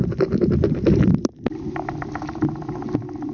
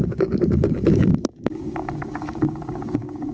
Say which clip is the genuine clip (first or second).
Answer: first